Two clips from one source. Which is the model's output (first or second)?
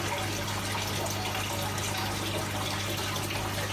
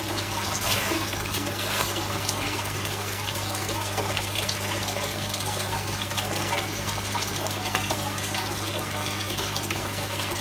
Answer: second